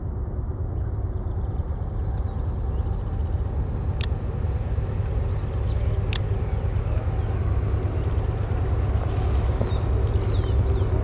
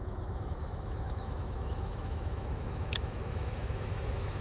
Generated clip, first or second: second